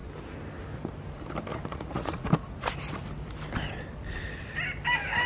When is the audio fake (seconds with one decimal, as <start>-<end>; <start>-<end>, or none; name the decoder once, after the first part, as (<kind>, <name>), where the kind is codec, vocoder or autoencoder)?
1.5-2.3 (vocoder, Vocos)